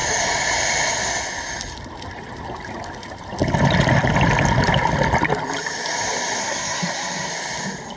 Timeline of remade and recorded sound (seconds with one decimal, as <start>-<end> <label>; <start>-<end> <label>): 0.0-6.4 recorded; 6.4-7.3 remade; 7.3-8.0 recorded